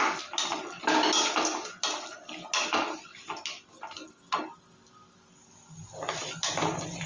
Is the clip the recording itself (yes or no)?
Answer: yes